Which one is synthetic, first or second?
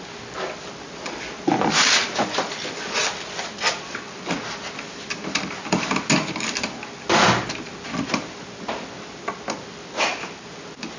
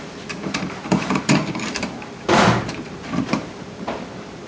second